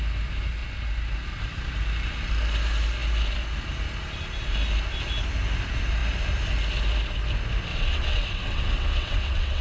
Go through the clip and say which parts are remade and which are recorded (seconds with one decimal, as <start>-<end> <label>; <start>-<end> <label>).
0.0-7.7 recorded; 7.7-9.6 remade

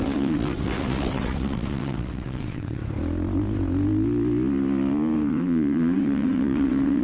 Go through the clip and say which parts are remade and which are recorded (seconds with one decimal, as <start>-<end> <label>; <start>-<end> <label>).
0.0-2.8 remade; 2.8-5.3 recorded; 5.3-7.0 remade

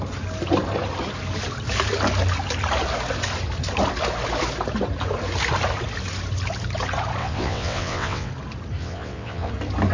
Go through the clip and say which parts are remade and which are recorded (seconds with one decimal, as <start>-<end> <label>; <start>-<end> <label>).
0.0-7.2 recorded; 7.2-8.3 remade; 8.3-8.8 recorded; 8.8-9.5 remade; 9.5-9.9 recorded

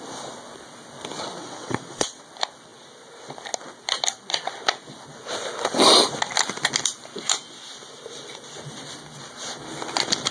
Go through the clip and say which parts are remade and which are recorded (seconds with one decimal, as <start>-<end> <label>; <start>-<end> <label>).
0.0-1.4 recorded; 1.4-2.2 remade; 2.2-10.3 recorded

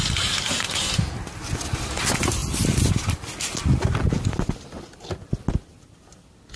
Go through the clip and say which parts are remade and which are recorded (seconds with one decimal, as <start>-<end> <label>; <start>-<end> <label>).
0.0-6.6 recorded

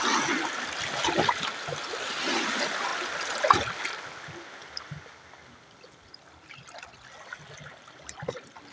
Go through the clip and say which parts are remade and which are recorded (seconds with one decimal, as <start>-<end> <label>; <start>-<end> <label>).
0.0-8.7 recorded

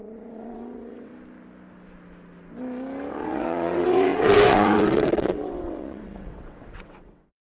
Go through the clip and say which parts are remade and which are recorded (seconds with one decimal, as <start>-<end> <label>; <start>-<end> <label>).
0.0-1.1 remade; 1.1-3.1 recorded; 3.1-7.4 remade

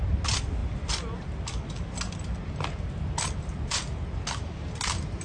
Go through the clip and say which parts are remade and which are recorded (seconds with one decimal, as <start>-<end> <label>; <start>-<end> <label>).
0.0-5.2 recorded